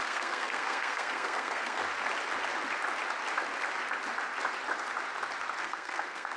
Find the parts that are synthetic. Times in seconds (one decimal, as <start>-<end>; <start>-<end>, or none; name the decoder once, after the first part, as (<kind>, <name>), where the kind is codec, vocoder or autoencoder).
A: 0.0-1.8 (codec, SNAC); 5.6-6.4